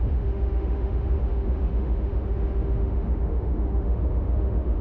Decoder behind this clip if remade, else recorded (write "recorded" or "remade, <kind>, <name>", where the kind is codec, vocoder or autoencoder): remade, autoencoder, DAC-VAE